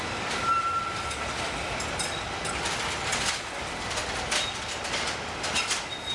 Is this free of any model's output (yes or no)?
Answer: yes